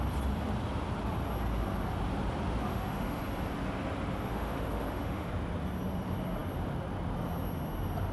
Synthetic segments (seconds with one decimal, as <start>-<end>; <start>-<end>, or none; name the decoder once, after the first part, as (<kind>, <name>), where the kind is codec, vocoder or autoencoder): 2.7-3.2 (autoencoder, DAC-VAE); 4.3-5.3